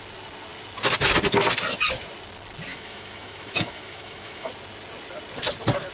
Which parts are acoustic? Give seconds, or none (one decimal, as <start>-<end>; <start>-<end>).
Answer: 0.0-2.7; 4.5-5.9